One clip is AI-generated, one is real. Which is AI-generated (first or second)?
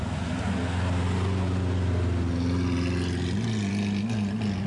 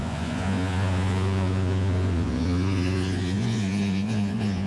second